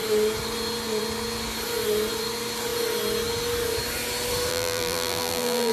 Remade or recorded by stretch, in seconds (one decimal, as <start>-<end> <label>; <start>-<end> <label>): 0.0-4.5 recorded; 4.5-5.7 remade